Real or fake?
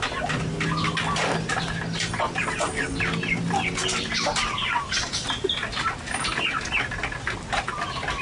real